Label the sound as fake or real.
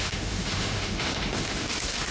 fake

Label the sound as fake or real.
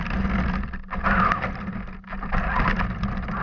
real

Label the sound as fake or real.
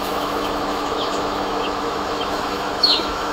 fake